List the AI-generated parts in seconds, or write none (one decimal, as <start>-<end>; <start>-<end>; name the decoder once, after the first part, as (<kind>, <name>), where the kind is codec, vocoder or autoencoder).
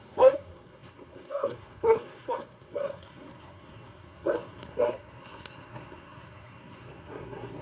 0.0-7.6 (codec, SNAC)